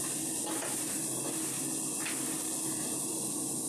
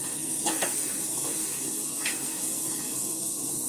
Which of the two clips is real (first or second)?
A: first